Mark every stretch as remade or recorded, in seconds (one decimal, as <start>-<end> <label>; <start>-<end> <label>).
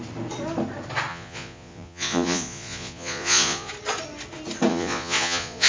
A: 0.0-1.1 recorded; 1.1-3.7 remade; 3.7-4.7 recorded; 4.7-5.7 remade